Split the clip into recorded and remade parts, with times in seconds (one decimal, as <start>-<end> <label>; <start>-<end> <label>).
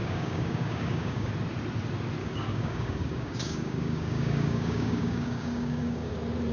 0.0-1.3 remade; 1.3-2.2 recorded; 2.2-6.1 remade; 6.1-6.5 recorded